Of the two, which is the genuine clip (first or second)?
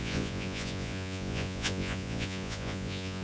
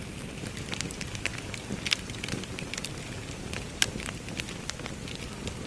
second